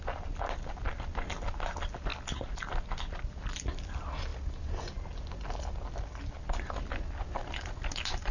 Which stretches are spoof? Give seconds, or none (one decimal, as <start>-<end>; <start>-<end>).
none